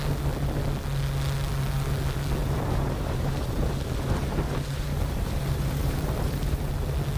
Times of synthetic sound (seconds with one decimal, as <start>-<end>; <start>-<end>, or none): 2.4-6.7